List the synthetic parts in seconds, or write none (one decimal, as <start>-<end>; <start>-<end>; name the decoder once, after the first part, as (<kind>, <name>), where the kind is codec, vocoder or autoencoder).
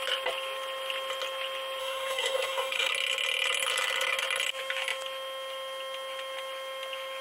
1.8-2.9 (codec, DAC)